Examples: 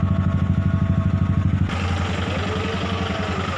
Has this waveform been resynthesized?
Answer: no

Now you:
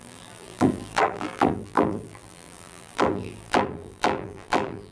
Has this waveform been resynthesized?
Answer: yes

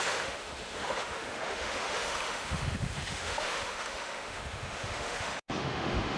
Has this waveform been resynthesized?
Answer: yes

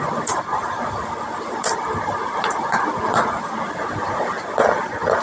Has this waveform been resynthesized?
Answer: yes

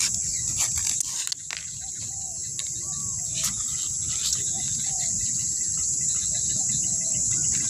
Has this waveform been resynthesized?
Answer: no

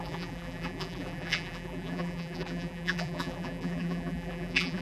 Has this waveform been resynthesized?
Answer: yes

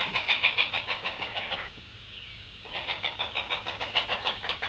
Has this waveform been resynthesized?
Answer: yes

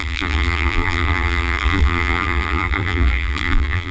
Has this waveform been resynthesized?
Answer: yes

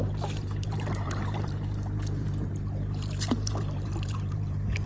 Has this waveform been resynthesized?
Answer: yes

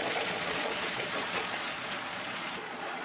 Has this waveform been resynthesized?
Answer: yes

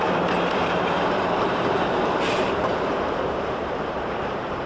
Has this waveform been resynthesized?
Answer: yes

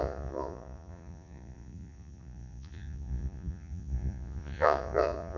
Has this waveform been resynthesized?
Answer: yes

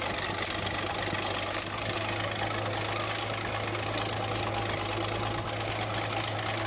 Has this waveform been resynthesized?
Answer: no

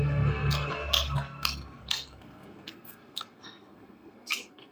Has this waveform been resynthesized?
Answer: yes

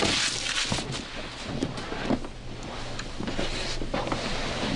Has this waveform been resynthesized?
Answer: no